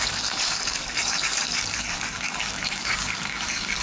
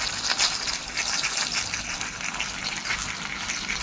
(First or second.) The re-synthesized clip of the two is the first